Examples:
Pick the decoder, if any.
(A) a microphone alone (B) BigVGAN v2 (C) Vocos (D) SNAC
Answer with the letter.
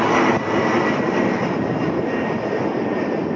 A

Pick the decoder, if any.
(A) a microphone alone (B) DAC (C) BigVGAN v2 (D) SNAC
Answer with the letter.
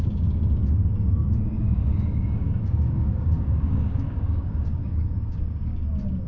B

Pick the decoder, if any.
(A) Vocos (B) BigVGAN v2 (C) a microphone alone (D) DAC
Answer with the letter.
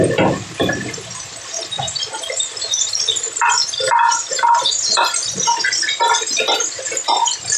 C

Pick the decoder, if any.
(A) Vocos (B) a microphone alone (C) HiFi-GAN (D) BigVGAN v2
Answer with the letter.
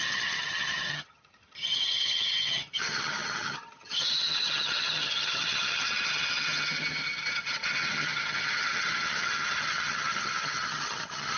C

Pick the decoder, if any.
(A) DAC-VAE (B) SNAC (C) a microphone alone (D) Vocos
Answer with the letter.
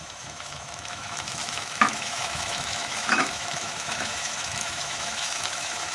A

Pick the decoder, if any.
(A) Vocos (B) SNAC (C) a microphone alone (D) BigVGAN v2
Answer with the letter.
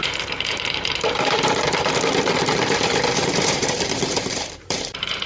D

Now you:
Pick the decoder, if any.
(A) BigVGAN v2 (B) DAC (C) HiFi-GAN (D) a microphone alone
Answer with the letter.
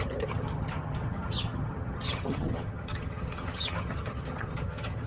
C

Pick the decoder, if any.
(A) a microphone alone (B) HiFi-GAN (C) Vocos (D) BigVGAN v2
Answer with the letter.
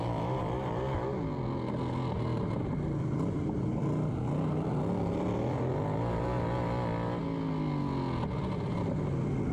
A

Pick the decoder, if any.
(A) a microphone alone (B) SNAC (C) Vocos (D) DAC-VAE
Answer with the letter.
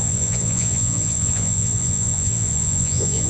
C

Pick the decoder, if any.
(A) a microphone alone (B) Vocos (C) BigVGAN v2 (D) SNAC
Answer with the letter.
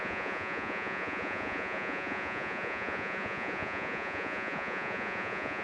B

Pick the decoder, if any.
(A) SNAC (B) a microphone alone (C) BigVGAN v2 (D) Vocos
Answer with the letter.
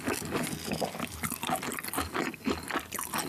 B